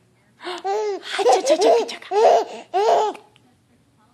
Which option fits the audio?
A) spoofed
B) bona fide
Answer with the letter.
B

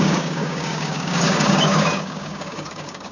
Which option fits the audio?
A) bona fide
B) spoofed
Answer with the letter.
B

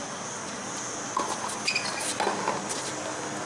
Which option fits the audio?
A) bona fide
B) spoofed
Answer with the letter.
A